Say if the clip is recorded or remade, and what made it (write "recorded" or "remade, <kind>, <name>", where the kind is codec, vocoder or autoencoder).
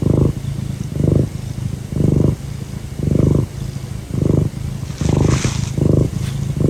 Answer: recorded